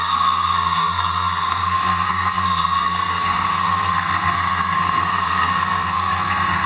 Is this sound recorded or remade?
remade